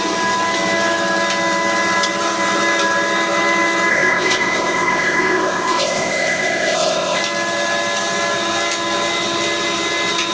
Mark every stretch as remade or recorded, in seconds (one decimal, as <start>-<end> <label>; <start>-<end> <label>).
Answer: 0.0-3.9 recorded; 3.9-7.2 remade; 7.2-10.3 recorded